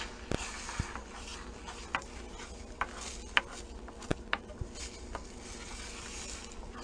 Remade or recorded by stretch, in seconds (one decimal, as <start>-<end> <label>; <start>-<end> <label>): 0.0-6.8 recorded